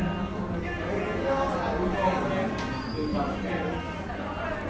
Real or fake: real